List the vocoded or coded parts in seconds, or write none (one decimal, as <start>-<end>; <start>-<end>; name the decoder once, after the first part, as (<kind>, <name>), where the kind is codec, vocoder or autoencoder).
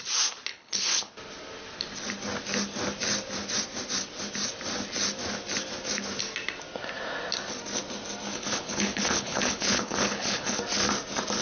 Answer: 0.5-1.1 (codec, HILCodec); 8.3-10.6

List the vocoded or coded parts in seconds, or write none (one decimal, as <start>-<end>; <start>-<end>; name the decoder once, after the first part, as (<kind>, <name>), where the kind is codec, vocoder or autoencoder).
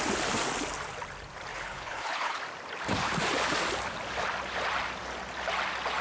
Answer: 1.5-2.4 (codec, HILCodec)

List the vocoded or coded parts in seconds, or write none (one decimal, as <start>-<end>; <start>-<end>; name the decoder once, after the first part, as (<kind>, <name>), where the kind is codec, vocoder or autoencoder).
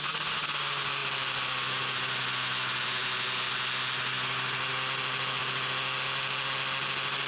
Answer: none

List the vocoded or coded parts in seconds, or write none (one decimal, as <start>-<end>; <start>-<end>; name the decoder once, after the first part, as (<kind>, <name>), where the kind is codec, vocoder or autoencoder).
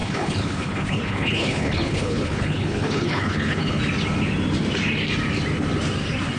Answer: 0.0-3.8 (codec, HILCodec)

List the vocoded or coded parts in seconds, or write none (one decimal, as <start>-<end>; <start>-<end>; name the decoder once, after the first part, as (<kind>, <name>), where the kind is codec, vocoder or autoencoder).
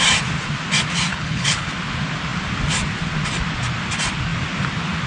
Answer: 1.1-1.7 (codec, HILCodec)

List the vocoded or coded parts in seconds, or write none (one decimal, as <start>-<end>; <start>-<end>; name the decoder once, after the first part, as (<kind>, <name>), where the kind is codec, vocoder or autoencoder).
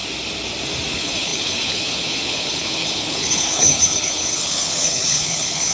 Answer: 0.9-5.7 (codec, HILCodec)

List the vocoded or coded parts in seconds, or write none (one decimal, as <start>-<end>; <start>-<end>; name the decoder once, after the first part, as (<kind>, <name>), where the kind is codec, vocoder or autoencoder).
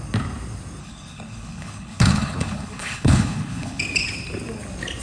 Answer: 0.8-3.8 (codec, HILCodec)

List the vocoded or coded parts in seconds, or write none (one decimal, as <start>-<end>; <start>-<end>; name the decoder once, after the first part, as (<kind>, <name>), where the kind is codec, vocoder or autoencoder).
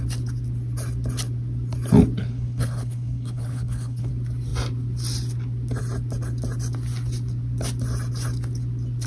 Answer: 2.2-4.1 (codec, HILCodec)